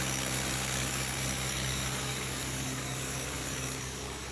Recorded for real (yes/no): no